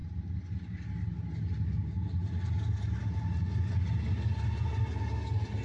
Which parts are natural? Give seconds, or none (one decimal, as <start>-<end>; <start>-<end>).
0.0-5.6